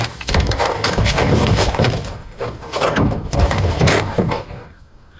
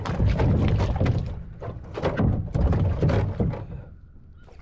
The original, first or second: second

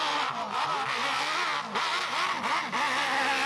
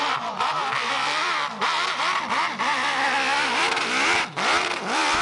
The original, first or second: first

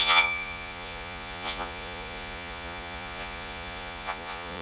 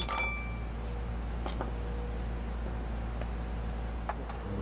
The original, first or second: second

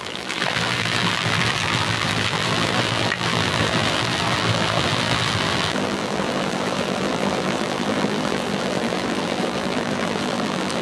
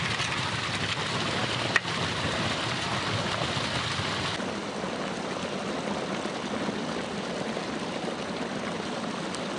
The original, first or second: second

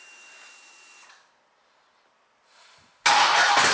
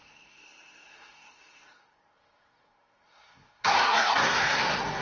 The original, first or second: first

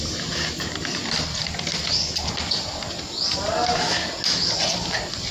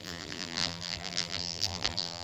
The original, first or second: first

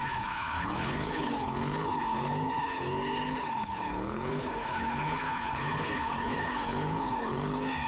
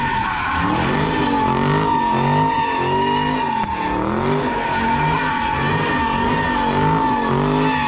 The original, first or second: second